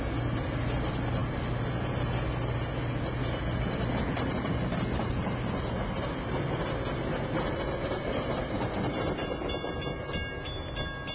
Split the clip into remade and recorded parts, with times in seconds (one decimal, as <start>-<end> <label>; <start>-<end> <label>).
0.0-11.1 recorded